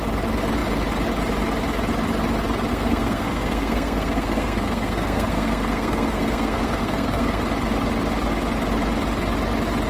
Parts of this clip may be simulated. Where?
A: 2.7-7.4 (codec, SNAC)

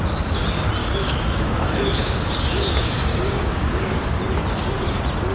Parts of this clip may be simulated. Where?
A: 0.8-4.0 (codec, DAC)

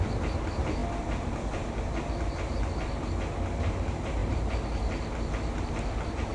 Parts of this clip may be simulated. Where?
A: none